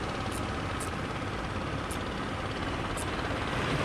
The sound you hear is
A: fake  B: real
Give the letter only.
B